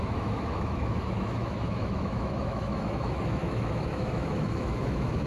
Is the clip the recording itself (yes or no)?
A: no